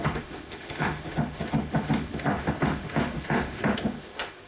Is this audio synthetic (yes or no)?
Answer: yes